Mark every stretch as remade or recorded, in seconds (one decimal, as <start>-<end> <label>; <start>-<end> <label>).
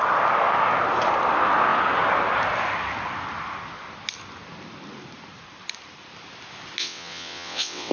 0.0-6.8 recorded; 6.8-7.9 remade